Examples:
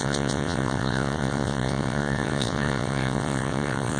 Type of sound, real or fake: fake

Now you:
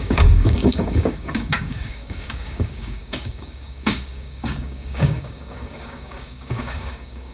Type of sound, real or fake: fake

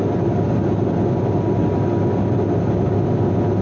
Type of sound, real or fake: real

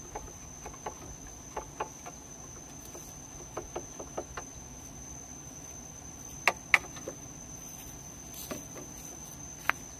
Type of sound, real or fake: real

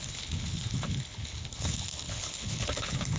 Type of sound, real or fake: fake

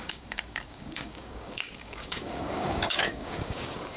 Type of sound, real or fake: fake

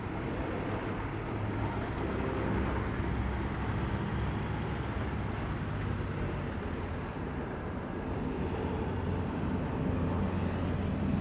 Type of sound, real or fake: real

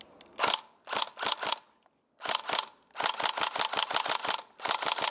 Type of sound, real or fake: real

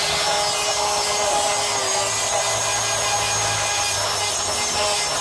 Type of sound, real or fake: real